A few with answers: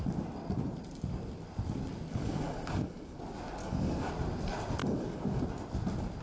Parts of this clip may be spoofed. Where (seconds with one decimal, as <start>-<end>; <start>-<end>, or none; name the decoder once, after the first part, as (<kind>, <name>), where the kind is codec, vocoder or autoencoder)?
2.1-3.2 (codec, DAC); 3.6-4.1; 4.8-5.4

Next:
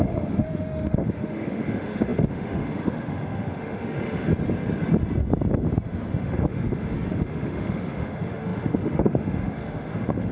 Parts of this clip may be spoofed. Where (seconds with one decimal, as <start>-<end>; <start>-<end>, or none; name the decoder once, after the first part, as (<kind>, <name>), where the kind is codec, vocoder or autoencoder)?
0.0-4.3 (autoencoder, DAC-VAE); 6.2-10.3

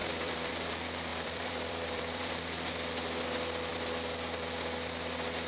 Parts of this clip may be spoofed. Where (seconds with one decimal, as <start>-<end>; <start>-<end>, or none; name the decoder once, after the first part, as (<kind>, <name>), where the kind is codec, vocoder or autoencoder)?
0.0-0.5 (vocoder, BigVGAN v2); 1.1-2.7

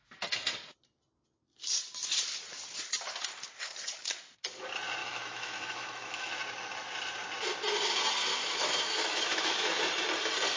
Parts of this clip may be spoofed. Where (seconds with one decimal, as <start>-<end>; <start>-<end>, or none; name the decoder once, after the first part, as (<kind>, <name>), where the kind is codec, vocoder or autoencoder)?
5.0-6.3 (autoencoder, DAC-VAE); 8.3-9.8

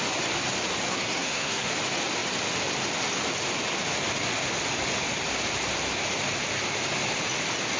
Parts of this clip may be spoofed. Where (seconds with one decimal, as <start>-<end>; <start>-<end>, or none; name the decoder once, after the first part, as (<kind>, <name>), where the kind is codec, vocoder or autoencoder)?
0.9-1.7 (codec, SNAC)